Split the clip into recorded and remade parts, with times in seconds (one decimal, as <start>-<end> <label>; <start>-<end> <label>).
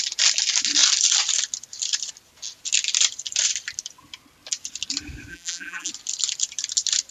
0.0-5.3 recorded; 5.3-5.9 remade; 5.9-7.1 recorded